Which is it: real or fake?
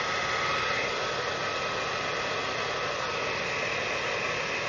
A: real